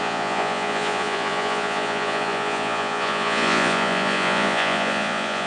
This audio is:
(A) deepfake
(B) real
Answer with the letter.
A